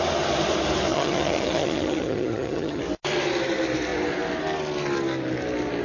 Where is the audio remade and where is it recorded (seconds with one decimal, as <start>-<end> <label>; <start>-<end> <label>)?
0.0-0.9 recorded; 0.9-2.8 remade; 2.8-5.8 recorded

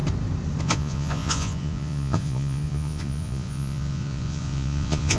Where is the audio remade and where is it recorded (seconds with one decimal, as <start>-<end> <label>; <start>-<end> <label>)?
0.0-0.6 recorded; 0.6-5.2 remade

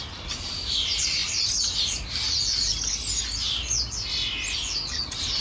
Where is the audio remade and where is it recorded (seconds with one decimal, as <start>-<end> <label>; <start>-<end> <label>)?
0.0-5.4 recorded

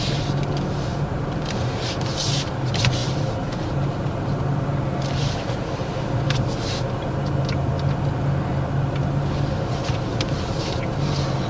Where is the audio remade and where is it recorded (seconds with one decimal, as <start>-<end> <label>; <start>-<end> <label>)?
0.0-0.9 recorded; 0.9-2.4 remade; 2.4-3.0 recorded; 3.0-5.9 remade; 5.9-10.1 recorded; 10.1-11.1 remade; 11.1-11.5 recorded

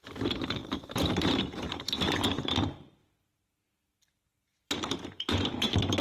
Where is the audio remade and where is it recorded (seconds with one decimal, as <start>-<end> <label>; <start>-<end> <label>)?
0.0-0.6 recorded; 0.6-2.1 remade; 2.1-3.0 recorded; 3.0-6.0 remade